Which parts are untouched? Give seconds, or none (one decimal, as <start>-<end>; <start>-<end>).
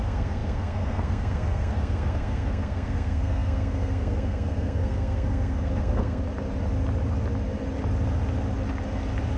6.2-9.4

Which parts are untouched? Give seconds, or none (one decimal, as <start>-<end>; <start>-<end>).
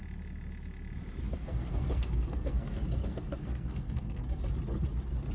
0.0-1.2; 4.4-5.3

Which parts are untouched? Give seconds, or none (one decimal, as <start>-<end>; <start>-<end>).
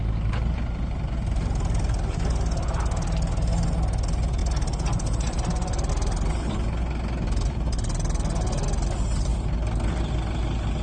0.0-10.8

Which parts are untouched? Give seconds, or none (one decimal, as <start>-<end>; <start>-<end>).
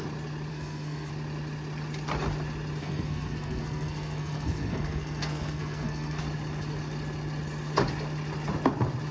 0.0-0.5; 1.1-2.8; 6.2-9.1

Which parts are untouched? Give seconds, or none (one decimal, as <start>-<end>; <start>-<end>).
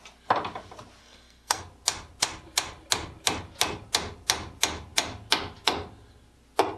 0.0-1.0; 1.6-6.8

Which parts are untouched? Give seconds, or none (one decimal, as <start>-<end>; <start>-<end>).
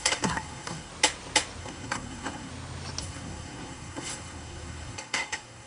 0.9-1.6; 2.5-3.0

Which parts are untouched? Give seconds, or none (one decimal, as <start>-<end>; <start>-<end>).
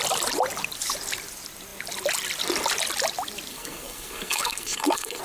0.0-3.5